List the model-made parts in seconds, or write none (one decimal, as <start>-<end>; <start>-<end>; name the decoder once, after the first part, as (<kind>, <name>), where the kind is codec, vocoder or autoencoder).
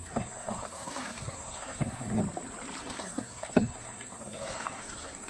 0.0-2.2 (codec, SNAC); 2.8-5.3